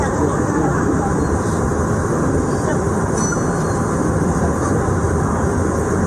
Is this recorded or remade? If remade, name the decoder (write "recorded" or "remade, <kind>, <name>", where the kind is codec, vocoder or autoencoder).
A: remade, vocoder, BigVGAN v2